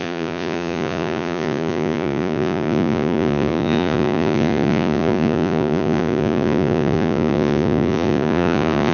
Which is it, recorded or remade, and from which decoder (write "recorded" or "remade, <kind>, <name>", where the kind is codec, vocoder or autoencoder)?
remade, vocoder, Vocos